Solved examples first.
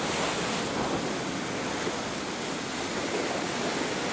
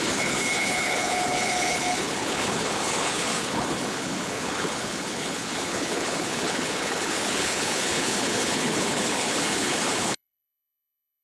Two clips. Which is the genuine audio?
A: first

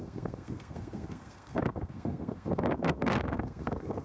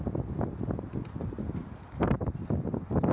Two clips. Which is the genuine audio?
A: second